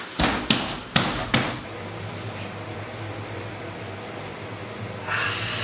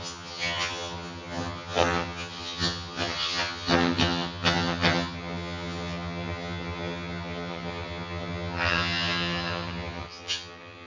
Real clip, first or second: first